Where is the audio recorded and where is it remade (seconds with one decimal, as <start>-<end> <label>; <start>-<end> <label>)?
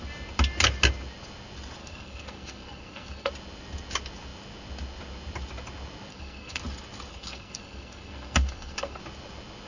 0.0-1.8 recorded; 1.8-3.3 remade; 3.3-6.1 recorded; 6.1-6.6 remade; 6.6-7.1 recorded; 7.1-9.0 remade; 9.0-9.7 recorded